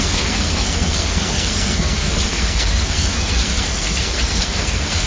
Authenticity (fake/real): fake